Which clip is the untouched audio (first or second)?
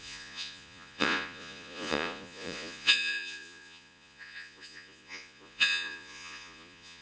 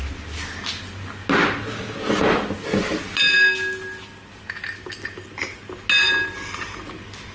second